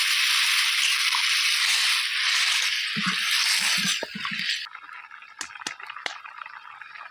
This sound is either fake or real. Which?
real